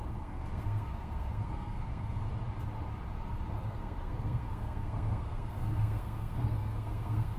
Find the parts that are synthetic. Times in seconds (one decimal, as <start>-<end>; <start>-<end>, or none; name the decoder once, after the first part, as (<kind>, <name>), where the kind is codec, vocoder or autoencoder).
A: 0.0-2.3 (codec, SNAC); 3.6-7.4